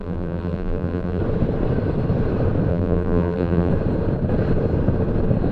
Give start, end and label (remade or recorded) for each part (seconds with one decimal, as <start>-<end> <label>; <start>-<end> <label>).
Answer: 0.0-1.2 remade; 1.2-2.7 recorded; 2.7-3.7 remade; 3.7-5.5 recorded